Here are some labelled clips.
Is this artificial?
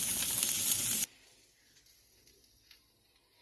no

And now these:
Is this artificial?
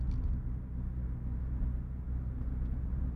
no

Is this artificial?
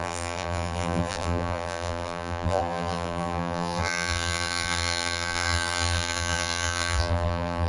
yes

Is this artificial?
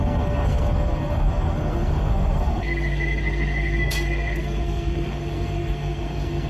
yes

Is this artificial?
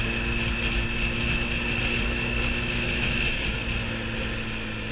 no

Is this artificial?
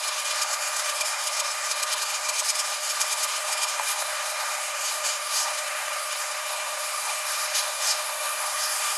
yes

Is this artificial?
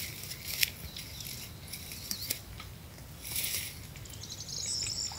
no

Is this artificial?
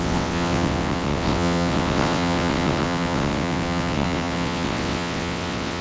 yes